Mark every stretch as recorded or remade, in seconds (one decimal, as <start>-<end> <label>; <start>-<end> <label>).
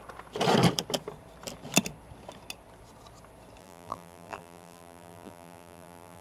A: 0.0-3.6 recorded; 3.6-6.2 remade